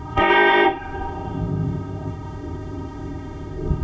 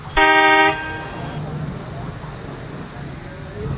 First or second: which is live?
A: second